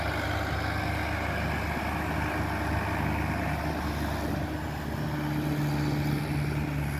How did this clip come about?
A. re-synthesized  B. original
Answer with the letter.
B